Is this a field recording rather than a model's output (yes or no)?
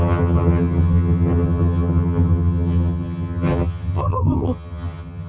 no